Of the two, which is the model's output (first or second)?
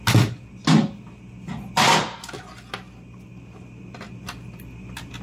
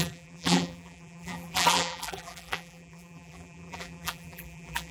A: second